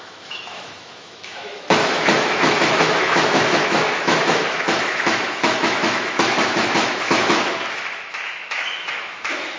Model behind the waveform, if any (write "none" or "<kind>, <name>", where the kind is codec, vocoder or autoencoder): autoencoder, DAC-VAE